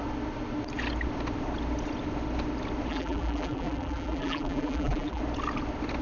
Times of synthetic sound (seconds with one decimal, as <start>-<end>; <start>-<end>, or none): 2.9-5.2

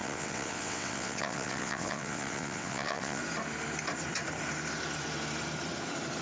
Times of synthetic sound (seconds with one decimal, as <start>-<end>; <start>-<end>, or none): 0.0-3.2

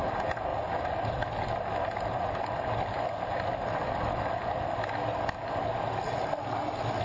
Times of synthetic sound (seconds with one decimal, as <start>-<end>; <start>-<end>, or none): none

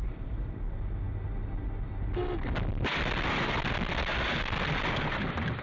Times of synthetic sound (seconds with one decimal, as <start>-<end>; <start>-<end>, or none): 0.0-0.6

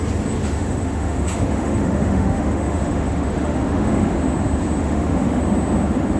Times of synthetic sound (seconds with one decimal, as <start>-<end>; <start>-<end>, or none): 0.4-4.1; 4.8-5.4

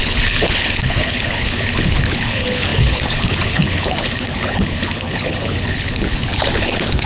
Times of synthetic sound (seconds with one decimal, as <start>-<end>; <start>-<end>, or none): 0.0-7.1